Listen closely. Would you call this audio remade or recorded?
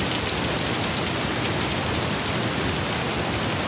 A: recorded